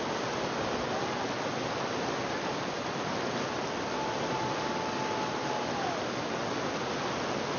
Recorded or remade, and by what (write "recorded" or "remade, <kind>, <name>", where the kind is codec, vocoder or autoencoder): recorded